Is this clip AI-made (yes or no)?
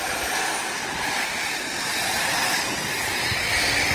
no